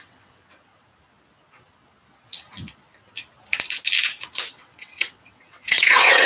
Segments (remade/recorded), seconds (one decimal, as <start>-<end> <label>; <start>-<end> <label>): 0.0-0.7 remade; 0.7-4.5 recorded; 4.5-6.3 remade